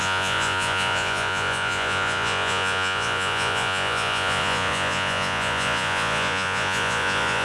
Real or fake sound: fake